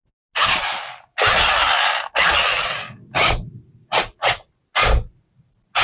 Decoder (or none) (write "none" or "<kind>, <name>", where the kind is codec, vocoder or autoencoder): none